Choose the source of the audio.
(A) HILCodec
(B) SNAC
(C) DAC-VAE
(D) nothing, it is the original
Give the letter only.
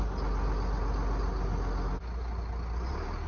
D